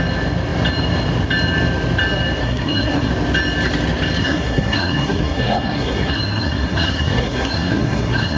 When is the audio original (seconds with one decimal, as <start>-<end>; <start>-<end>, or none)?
0.0-2.4; 3.1-4.2